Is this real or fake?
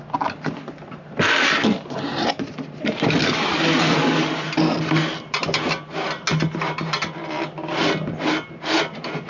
real